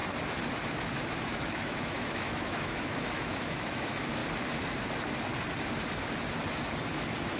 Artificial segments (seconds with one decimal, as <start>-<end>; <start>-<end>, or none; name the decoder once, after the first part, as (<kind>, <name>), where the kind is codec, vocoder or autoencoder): 1.2-4.2 (autoencoder, DAC-VAE)